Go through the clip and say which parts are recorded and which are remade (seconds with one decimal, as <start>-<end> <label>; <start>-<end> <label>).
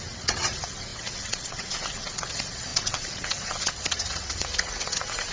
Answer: 0.0-5.3 remade